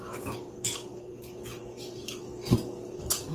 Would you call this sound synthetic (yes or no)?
yes